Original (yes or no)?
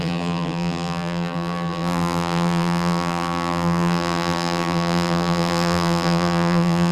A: no